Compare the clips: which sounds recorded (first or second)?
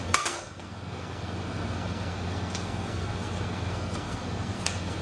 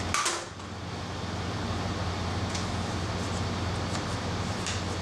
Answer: second